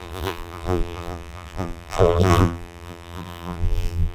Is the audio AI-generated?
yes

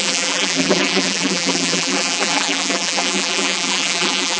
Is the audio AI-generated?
yes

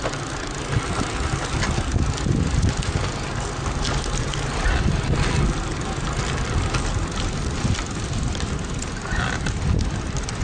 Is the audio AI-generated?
no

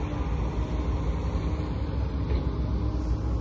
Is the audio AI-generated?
no